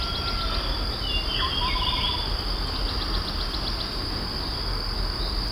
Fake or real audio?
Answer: real